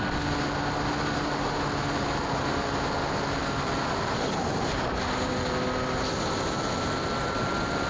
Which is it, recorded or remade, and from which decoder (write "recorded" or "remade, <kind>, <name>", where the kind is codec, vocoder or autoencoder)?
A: recorded